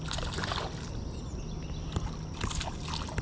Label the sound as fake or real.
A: real